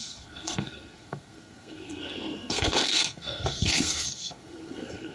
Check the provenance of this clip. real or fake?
fake